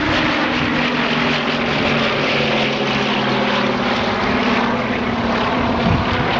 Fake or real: real